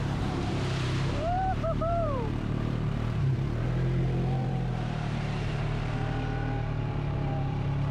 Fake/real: fake